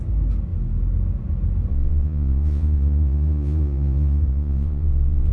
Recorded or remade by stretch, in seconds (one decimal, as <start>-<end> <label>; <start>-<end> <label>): 0.0-1.7 recorded; 1.7-5.3 remade